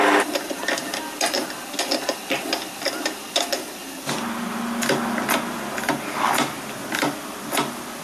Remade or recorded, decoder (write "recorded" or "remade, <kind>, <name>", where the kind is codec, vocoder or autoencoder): recorded